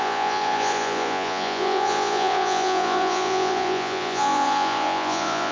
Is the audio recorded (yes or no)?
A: no